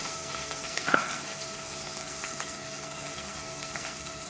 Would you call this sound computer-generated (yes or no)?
yes